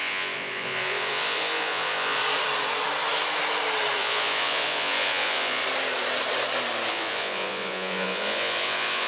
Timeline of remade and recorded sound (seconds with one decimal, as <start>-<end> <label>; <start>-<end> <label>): 0.0-2.2 remade; 2.2-4.0 recorded; 4.0-5.6 remade; 5.6-6.9 recorded; 6.9-9.1 remade